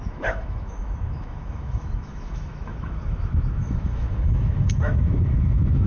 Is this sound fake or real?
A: fake